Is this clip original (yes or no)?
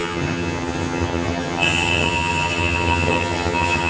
no